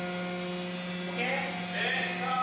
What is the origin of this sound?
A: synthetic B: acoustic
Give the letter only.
B